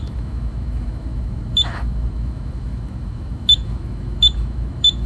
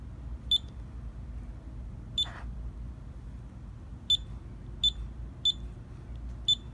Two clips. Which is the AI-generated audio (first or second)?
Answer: first